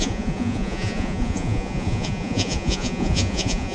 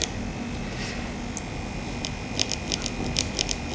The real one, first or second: second